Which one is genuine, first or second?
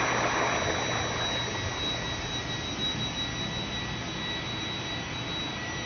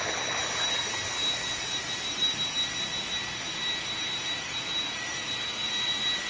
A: first